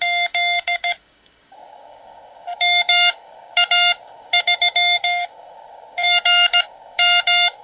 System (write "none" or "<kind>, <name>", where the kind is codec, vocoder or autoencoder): codec, DAC